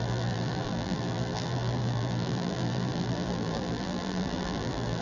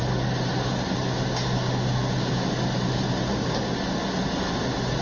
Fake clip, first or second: first